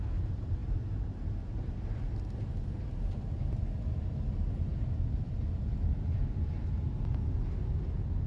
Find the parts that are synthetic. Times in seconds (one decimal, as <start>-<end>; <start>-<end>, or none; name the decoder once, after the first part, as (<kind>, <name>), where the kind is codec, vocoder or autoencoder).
4.7-6.6 (vocoder, BigVGAN v2)